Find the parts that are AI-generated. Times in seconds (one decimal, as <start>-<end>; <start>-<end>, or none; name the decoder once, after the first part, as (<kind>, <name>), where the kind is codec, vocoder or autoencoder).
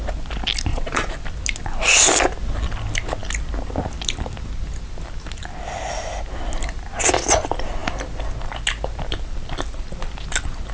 0.7-1.2 (vocoder, Vocos)